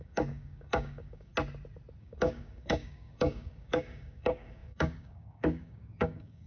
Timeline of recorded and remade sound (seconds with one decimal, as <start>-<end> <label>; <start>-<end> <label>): 0.0-1.3 remade; 1.3-2.0 recorded; 2.0-6.5 remade

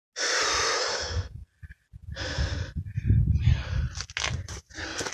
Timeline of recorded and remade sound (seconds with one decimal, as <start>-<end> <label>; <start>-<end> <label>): 0.0-0.9 recorded; 0.9-1.5 remade; 1.5-5.1 recorded

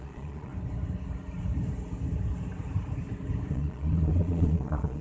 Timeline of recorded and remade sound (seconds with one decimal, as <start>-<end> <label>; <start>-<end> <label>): 0.0-0.5 remade; 0.5-3.5 recorded; 3.5-5.0 remade

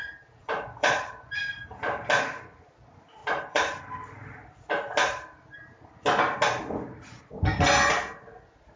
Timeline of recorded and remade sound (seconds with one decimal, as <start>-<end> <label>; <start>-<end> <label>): 0.0-0.4 recorded; 0.4-1.8 remade; 1.8-3.2 recorded; 3.2-3.8 remade; 3.8-8.8 recorded

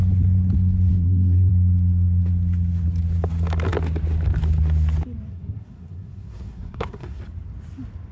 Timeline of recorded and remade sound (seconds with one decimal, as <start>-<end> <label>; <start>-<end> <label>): 0.0-0.9 recorded; 0.9-1.5 remade; 1.5-5.3 recorded; 5.3-7.2 remade; 7.2-8.1 recorded

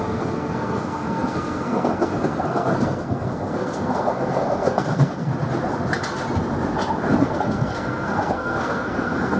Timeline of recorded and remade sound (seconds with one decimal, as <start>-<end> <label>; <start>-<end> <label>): 0.0-5.3 remade; 5.3-7.2 recorded; 7.2-9.4 remade